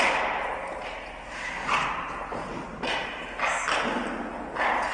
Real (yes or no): yes